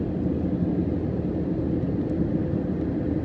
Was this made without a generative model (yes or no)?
yes